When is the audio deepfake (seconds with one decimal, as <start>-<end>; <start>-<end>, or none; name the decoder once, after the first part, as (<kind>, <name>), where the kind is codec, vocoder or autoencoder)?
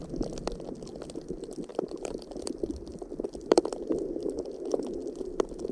1.7-3.9 (vocoder, BigVGAN v2)